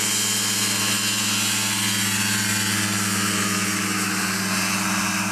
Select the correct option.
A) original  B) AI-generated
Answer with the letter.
A